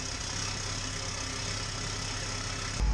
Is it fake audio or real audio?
real